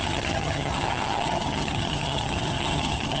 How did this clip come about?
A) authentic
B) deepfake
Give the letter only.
B